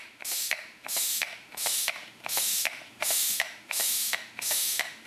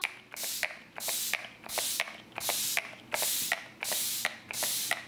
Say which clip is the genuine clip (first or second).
second